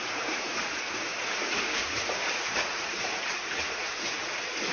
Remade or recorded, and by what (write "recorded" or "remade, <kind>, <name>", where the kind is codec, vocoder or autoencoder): remade, vocoder, Vocos